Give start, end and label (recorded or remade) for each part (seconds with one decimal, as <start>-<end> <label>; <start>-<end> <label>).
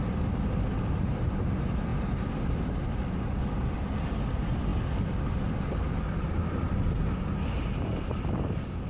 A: 0.0-8.9 recorded